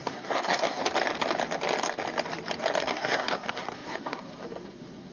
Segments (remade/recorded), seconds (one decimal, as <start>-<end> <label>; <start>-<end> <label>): 0.0-0.8 remade; 0.8-2.8 recorded; 2.8-5.1 remade